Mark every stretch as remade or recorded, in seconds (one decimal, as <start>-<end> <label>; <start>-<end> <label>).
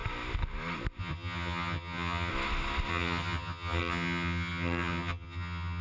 0.0-1.0 recorded; 1.0-2.3 remade; 2.3-2.9 recorded; 2.9-5.8 remade